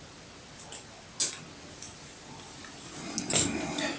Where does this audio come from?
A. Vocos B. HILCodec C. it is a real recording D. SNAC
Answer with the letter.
C